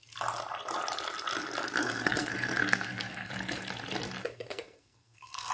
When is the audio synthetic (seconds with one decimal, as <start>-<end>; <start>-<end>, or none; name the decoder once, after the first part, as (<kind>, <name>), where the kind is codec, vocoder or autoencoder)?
1.8-3.3 (codec, SNAC); 4.2-5.5